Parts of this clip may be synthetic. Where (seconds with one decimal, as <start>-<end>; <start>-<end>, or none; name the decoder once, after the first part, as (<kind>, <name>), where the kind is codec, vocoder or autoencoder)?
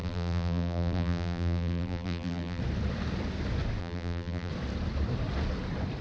0.0-2.6 (vocoder, BigVGAN v2); 3.8-4.5